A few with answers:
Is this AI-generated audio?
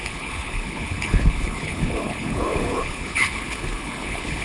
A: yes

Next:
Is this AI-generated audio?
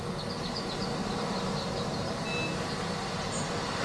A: no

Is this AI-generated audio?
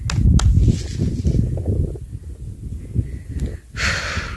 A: no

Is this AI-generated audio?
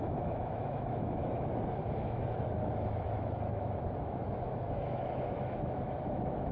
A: yes